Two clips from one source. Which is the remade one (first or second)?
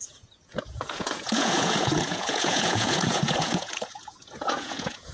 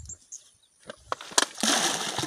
first